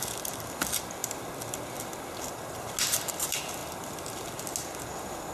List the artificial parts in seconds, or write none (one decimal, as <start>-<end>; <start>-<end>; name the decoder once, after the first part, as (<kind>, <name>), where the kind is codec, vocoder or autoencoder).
none